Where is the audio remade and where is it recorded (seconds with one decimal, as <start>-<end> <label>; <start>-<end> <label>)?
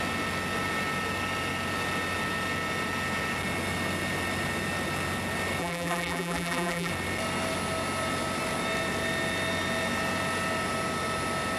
0.0-5.6 recorded; 5.6-6.9 remade; 6.9-11.6 recorded